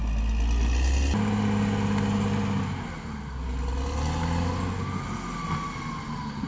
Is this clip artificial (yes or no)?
no